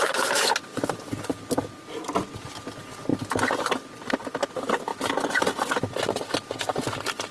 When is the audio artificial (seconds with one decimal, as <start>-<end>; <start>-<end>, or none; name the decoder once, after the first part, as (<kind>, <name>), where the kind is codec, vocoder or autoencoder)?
none